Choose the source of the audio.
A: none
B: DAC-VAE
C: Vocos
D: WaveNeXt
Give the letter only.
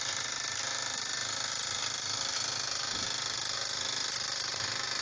A